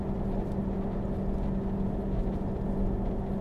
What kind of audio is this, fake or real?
real